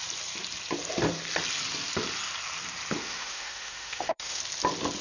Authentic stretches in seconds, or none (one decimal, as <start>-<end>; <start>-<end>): 0.0-3.0; 4.4-5.0